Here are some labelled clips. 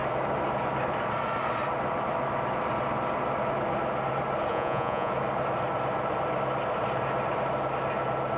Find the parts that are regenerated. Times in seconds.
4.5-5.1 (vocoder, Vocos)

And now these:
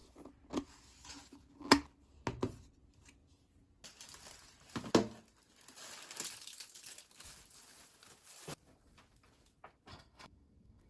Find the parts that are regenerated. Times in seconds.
9.9-10.9 (codec, SNAC)

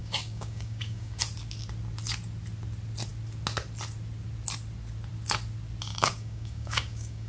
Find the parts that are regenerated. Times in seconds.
0.0-1.2 (codec, DAC); 5.9-7.3

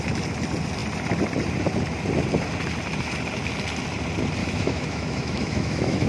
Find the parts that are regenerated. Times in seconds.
4.4-6.1 (autoencoder, DAC-VAE)

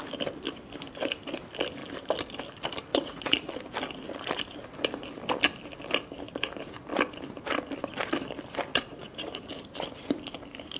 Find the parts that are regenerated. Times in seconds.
2.9-3.5 (vocoder, Vocos); 8.7-9.4

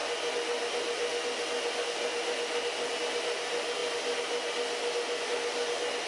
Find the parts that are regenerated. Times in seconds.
none

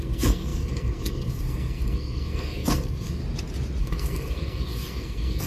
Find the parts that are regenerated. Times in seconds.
0.0-3.2 (codec, SNAC); 3.8-5.5